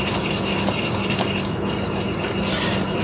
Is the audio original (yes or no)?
yes